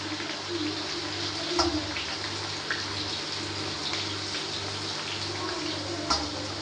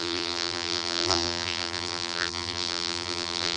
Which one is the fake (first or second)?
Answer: second